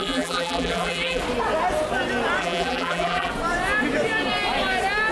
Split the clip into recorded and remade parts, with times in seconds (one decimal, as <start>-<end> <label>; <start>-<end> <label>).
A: 0.0-1.2 remade; 1.2-2.4 recorded; 2.4-3.3 remade; 3.3-5.1 recorded